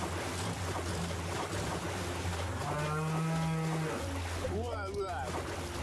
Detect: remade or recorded recorded